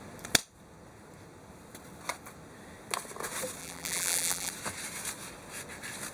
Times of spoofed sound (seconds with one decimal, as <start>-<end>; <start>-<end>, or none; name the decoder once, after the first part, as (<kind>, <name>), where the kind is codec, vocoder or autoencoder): 3.6-4.5 (vocoder, BigVGAN v2)